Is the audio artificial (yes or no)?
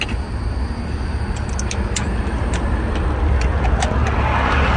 no